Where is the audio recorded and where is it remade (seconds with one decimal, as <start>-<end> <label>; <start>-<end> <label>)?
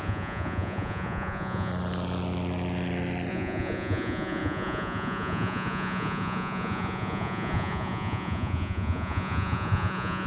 0.0-1.7 remade; 1.7-3.3 recorded; 3.3-10.3 remade